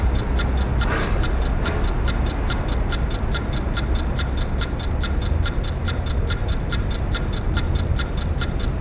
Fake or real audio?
real